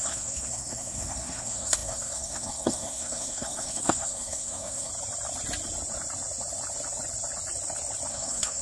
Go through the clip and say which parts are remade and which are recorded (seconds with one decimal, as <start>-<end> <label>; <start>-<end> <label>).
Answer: 0.0-4.9 remade; 4.9-8.1 recorded; 8.1-8.6 remade